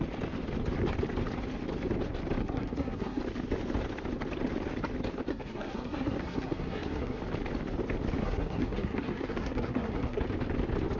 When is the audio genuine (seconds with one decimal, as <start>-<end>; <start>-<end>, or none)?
0.0-2.4; 3.2-5.3; 7.2-8.2; 10.2-11.0